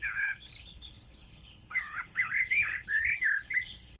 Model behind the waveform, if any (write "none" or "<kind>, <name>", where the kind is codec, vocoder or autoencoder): codec, HILCodec